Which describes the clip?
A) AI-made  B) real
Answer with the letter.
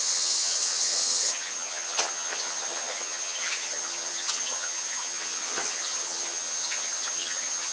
A